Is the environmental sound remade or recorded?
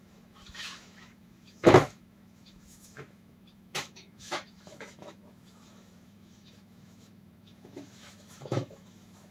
remade